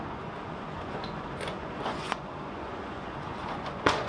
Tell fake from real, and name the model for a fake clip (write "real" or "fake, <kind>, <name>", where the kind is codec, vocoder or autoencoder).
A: fake, vocoder, Vocos